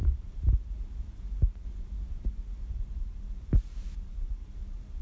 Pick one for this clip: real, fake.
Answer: fake